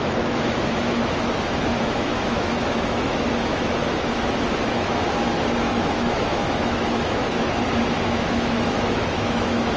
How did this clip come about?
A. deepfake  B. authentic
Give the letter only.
A